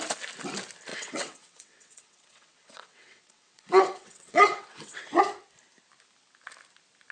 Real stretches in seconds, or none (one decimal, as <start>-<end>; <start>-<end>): 0.0-0.9; 5.2-7.1